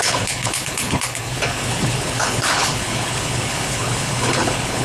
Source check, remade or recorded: remade